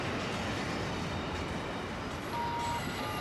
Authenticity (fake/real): real